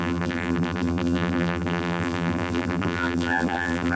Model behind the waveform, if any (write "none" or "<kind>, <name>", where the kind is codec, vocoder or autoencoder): vocoder, BigVGAN v2